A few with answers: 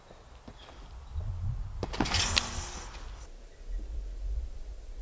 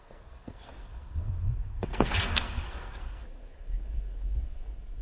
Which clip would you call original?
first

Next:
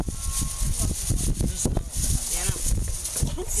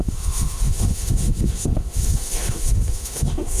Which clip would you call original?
first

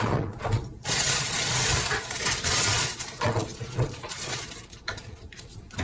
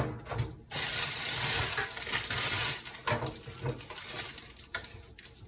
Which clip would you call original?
second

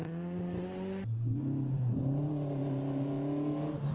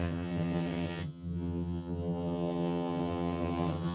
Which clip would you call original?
first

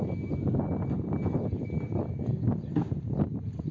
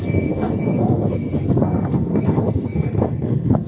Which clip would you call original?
first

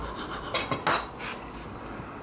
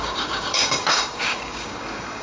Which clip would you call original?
first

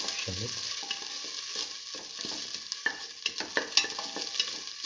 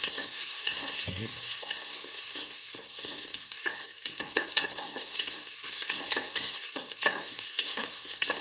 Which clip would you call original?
first